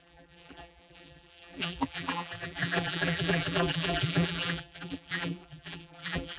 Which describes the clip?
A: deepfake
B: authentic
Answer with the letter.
A